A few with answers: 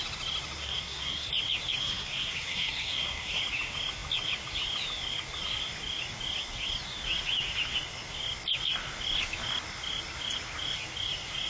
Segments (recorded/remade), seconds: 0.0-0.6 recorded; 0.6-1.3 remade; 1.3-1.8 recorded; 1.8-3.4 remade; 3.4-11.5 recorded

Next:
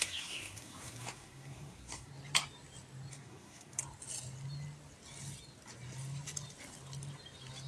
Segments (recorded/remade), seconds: 0.0-2.1 remade; 2.1-3.1 recorded; 3.1-3.8 remade; 3.8-7.7 recorded

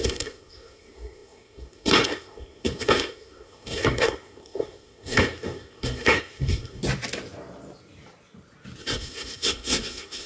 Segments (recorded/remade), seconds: 0.0-6.8 remade; 6.8-8.8 recorded; 8.8-10.3 remade

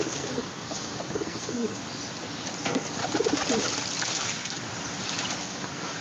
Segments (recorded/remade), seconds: 0.0-1.8 remade; 1.8-2.6 recorded; 2.6-3.0 remade; 3.0-4.0 recorded; 4.0-4.6 remade; 4.6-5.4 recorded; 5.4-6.0 remade

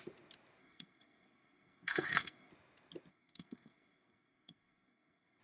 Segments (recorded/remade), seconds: 0.0-0.6 recorded; 0.6-2.5 remade; 2.5-3.1 recorded; 3.1-5.4 remade